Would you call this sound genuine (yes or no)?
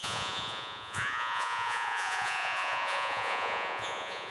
no